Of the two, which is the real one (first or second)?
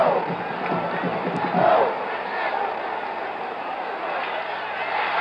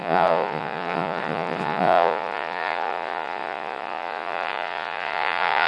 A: first